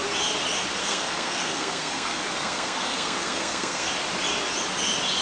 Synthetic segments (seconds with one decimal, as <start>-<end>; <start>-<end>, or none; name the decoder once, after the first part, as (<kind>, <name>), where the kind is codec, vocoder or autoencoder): 0.8-3.9 (codec, SNAC)